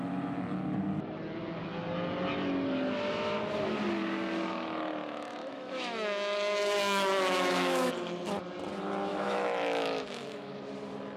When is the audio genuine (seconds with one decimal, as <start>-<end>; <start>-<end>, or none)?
0.0-5.4; 7.9-9.1; 10.5-11.2